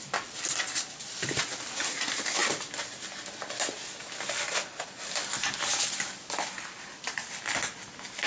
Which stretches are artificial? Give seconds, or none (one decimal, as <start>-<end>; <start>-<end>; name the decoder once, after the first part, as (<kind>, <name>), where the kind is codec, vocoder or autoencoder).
none